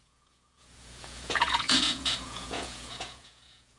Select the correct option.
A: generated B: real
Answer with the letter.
A